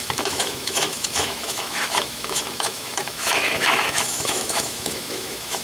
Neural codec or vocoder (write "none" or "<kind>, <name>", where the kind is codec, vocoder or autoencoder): autoencoder, DAC-VAE